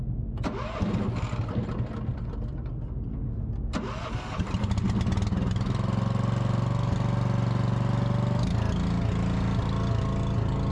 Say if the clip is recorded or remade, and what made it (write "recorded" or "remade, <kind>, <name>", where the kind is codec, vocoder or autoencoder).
recorded